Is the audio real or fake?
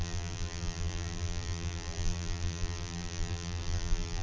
fake